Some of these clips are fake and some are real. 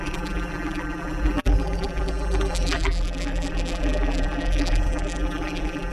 fake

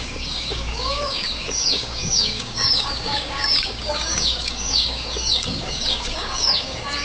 fake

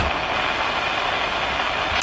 real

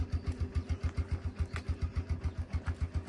real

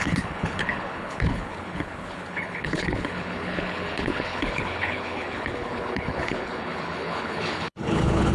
fake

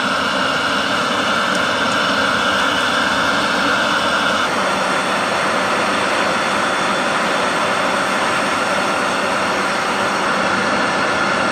real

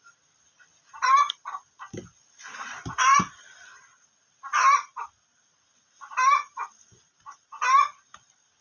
real